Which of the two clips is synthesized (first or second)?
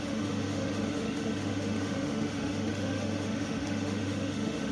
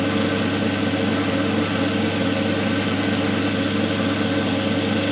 first